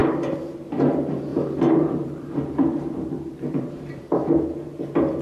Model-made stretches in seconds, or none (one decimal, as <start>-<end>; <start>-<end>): 1.3-4.4